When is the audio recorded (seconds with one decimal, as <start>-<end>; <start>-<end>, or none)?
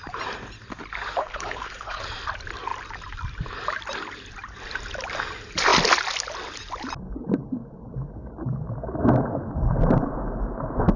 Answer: 0.0-1.2; 2.0-11.0